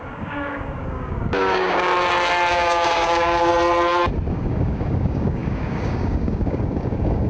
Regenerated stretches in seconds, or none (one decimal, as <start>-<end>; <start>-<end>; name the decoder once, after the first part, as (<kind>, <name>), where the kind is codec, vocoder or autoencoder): 0.0-1.9 (codec, DAC); 2.5-3.5; 4.3-7.3